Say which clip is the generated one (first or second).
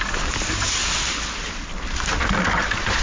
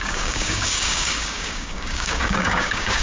second